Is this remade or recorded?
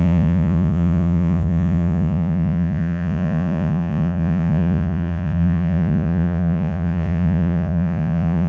remade